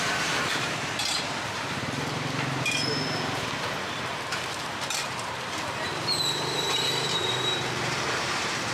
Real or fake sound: fake